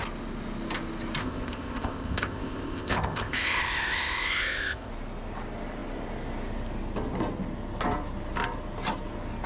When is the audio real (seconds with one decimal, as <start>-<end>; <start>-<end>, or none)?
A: 0.0-1.2; 4.9-9.5